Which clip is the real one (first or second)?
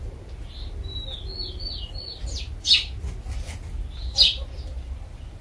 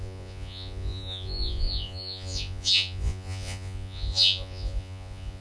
first